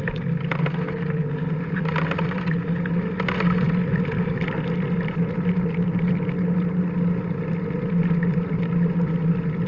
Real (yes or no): yes